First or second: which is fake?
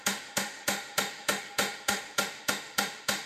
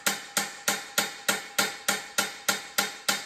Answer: first